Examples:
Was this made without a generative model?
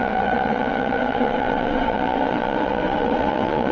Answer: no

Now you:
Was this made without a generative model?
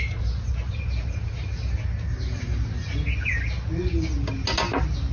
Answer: yes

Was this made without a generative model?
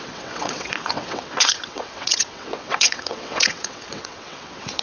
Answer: no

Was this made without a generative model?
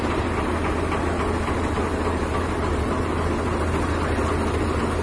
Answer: yes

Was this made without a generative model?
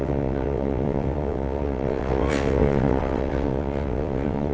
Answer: no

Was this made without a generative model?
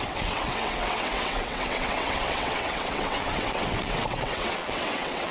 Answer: no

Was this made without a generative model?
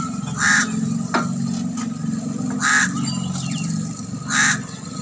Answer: yes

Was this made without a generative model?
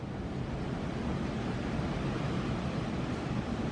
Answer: yes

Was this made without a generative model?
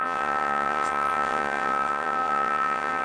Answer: no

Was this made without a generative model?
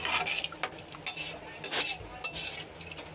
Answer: yes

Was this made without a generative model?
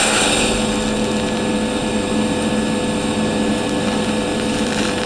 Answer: yes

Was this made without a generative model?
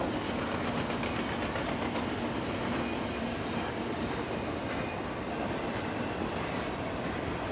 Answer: yes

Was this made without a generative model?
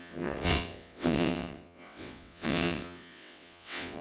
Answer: no